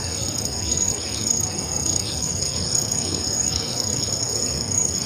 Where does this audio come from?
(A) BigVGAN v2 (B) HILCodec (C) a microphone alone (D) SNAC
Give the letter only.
D